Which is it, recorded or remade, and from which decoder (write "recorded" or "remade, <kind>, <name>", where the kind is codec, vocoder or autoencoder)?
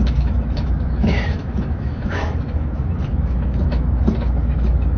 remade, autoencoder, DAC-VAE